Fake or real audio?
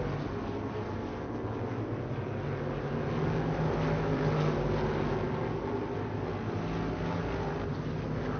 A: real